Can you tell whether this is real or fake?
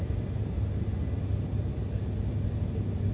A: real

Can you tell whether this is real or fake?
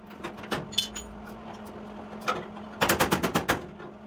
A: real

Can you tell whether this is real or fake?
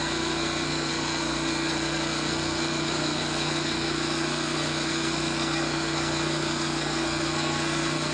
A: fake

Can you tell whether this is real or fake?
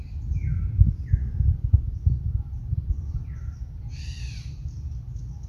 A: real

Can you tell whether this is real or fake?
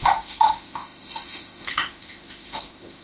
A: fake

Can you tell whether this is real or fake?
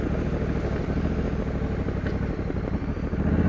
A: real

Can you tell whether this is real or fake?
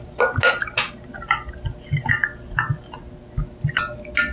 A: real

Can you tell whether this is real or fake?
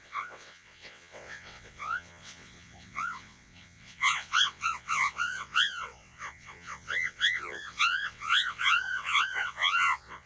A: fake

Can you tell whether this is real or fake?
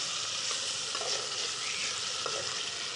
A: real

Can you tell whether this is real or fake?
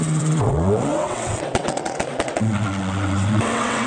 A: fake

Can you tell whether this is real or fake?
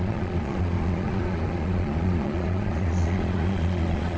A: fake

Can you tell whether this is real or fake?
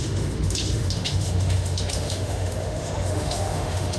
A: fake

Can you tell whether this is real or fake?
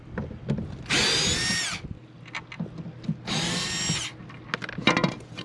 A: real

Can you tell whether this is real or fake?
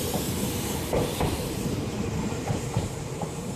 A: fake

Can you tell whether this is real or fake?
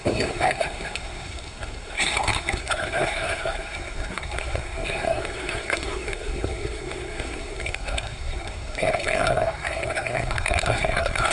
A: fake